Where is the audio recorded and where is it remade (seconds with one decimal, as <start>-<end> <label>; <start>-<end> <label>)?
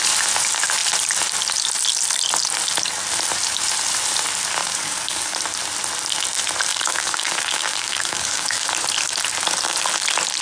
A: 0.0-4.6 recorded; 4.6-5.4 remade; 5.4-6.7 recorded; 6.7-8.7 remade; 8.7-10.4 recorded